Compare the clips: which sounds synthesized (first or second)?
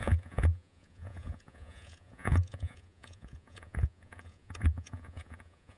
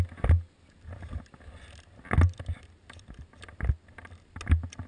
first